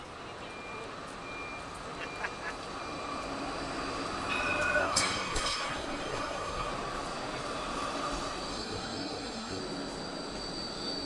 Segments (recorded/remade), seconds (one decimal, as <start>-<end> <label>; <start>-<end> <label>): 0.0-4.8 recorded; 4.8-6.7 remade; 6.7-8.5 recorded; 8.5-9.6 remade; 9.6-11.1 recorded